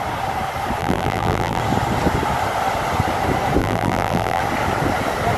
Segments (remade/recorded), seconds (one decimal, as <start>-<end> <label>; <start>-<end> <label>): 0.0-0.8 recorded; 0.8-1.6 remade; 1.6-3.6 recorded; 3.6-4.4 remade; 4.4-5.4 recorded